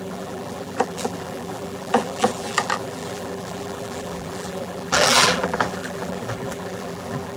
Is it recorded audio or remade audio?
remade